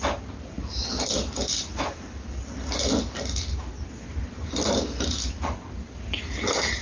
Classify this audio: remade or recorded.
recorded